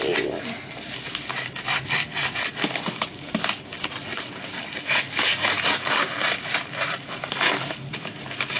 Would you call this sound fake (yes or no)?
no